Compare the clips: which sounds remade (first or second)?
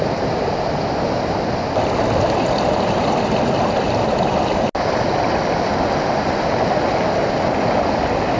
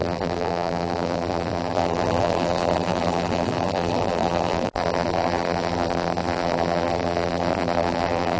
second